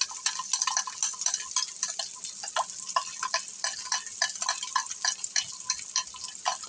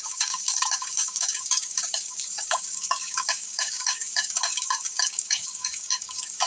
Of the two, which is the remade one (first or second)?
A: second